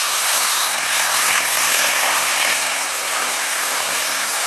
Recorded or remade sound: remade